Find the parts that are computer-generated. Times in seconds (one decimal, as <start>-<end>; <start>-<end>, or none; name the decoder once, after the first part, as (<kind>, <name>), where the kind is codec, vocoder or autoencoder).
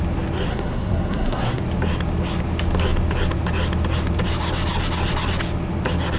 0.5-1.6 (codec, SNAC)